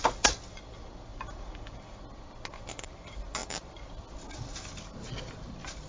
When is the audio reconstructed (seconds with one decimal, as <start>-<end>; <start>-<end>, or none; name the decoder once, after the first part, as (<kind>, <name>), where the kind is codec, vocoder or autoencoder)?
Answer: 1.1-2.0 (vocoder, BigVGAN v2)